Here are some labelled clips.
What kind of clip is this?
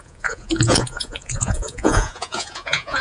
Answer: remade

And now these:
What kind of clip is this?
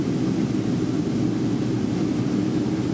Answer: recorded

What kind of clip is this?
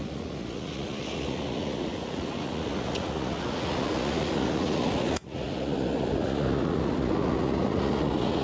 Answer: remade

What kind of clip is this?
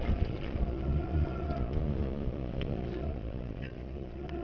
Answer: remade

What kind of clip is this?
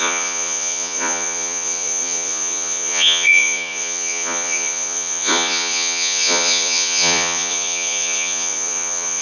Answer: remade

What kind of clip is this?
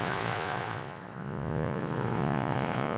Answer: remade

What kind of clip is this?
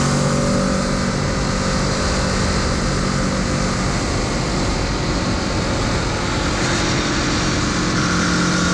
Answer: recorded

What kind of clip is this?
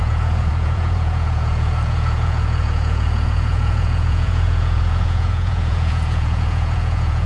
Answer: remade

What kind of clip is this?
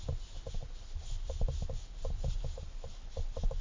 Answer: recorded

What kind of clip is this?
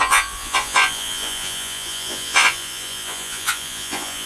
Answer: remade